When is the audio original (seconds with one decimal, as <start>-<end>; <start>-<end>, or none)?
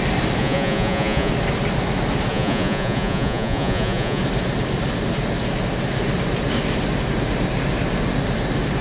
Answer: 0.0-0.4; 1.3-2.3; 4.2-8.8